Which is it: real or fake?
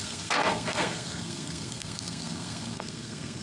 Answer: fake